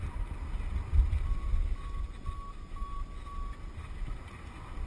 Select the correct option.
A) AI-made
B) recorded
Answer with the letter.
B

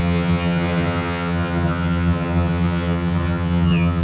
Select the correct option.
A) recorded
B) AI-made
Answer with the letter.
B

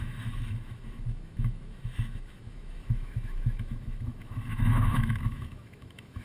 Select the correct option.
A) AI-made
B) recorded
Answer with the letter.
A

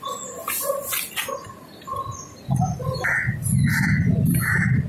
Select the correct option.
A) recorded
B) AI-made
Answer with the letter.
A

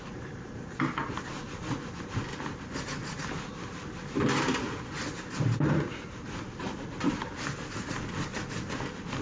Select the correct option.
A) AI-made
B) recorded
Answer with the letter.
B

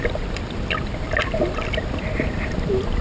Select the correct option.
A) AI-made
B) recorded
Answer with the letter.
A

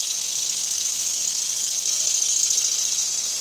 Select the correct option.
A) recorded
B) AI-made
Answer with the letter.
B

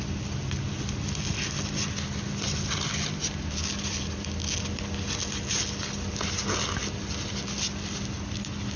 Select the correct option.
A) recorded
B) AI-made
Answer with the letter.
A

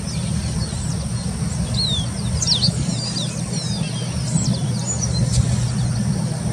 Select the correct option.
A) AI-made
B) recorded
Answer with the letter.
B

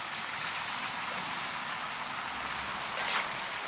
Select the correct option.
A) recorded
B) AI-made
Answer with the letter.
A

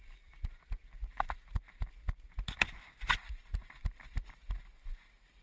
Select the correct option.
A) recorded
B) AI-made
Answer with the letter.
A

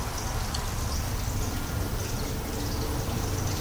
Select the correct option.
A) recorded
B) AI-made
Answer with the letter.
A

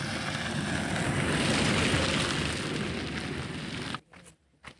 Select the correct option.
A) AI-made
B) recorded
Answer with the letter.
B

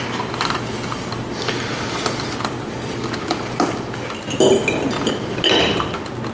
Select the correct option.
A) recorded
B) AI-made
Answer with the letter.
A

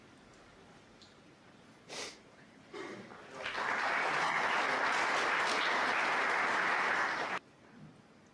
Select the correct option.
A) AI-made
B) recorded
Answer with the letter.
B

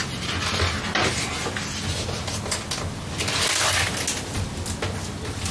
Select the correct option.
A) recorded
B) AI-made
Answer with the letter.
A